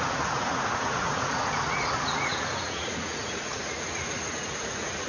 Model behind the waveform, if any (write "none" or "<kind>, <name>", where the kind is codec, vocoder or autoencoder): vocoder, Vocos